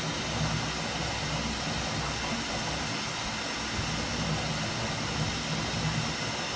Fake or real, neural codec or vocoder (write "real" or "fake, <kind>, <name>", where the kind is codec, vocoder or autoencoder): real